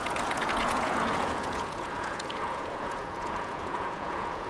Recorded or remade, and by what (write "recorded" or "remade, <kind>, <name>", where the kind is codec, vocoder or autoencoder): remade, vocoder, Vocos